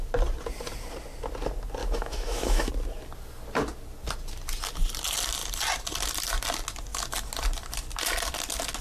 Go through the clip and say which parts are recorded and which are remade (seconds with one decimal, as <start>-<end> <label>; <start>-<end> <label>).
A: 0.0-1.8 recorded; 1.8-2.7 remade; 2.7-8.8 recorded